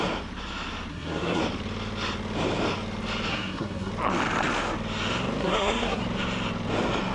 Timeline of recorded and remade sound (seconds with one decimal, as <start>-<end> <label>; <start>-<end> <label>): 0.0-0.9 recorded; 0.9-1.4 remade; 1.4-3.3 recorded; 3.3-3.9 remade; 3.9-5.4 recorded; 5.4-6.0 remade; 6.0-7.1 recorded